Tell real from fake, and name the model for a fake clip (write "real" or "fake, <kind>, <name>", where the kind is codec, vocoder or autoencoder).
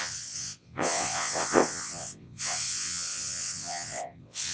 fake, vocoder, WaveNeXt